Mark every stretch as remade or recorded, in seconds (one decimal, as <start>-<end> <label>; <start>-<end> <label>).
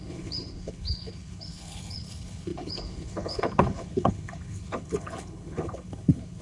0.0-6.4 remade